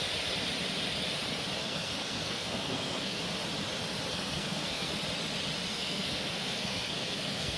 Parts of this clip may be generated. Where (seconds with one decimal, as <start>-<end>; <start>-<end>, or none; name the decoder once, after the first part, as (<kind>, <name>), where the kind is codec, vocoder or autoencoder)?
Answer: 1.6-3.2 (codec, SNAC); 4.1-4.9; 5.7-7.6